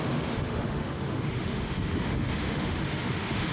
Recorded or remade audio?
remade